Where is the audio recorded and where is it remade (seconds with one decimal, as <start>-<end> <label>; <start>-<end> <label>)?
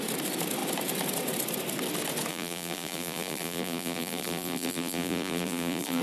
0.0-2.3 recorded; 2.3-6.0 remade